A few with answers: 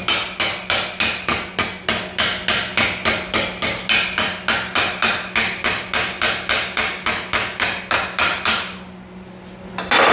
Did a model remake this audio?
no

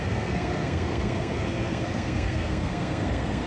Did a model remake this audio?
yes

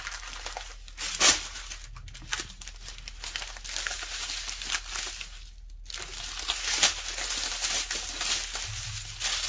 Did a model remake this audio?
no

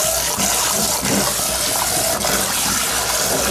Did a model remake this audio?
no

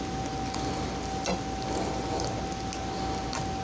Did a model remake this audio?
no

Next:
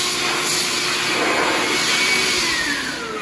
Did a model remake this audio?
no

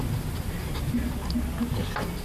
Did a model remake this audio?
no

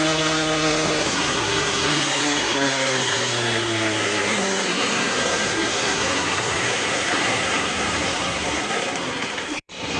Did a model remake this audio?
yes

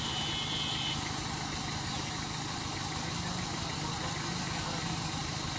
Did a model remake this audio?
no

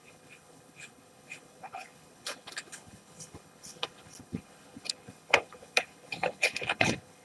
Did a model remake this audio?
yes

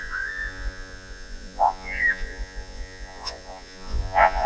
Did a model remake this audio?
yes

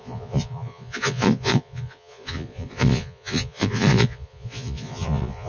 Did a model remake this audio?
yes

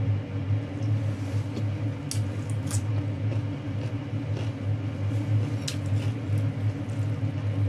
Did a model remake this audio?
no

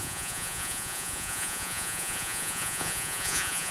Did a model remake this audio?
yes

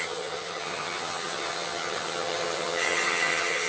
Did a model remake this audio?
yes